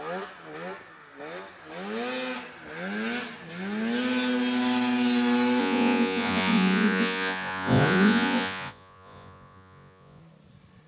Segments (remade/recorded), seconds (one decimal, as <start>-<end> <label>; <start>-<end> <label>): 0.0-5.6 recorded; 5.6-10.2 remade; 10.2-10.9 recorded